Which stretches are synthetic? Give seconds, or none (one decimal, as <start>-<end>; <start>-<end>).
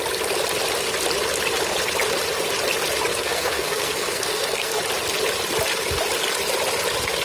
3.1-4.8